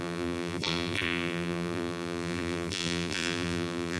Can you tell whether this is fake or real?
fake